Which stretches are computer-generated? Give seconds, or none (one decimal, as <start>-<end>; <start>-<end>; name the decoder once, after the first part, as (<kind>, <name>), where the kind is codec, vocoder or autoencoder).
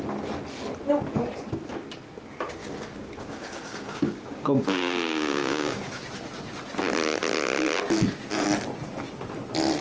2.6-6.0 (codec, DAC)